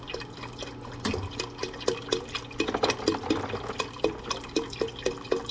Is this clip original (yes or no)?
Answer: yes